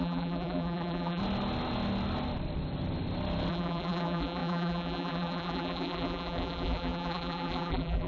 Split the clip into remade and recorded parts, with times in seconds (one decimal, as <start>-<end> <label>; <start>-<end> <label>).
0.0-1.2 remade; 1.2-3.5 recorded; 3.5-8.1 remade